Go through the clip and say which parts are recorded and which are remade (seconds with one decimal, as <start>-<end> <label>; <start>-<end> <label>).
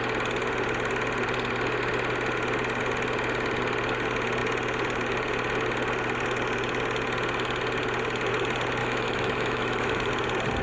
0.0-8.8 recorded; 8.8-10.1 remade; 10.1-10.6 recorded